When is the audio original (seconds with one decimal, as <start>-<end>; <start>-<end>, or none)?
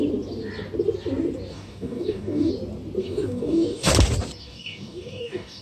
0.0-1.5; 2.5-3.0; 3.9-4.4